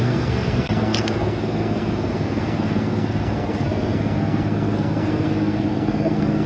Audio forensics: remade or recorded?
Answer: remade